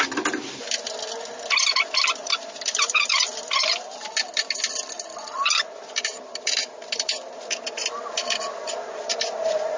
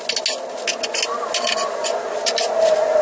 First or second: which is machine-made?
first